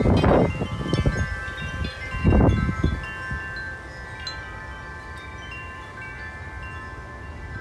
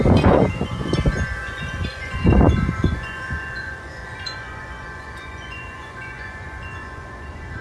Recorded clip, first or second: first